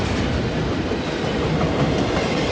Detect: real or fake real